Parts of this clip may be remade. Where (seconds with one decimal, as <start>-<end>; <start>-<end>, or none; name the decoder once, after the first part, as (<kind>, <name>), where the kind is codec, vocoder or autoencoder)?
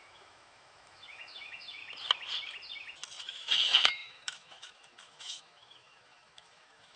0.0-1.8 (autoencoder, DAC-VAE); 3.2-7.0